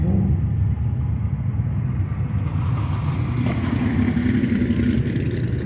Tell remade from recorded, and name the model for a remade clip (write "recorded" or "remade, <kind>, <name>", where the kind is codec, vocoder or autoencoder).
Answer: recorded